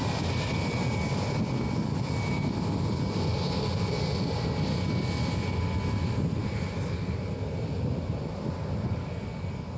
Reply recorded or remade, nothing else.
recorded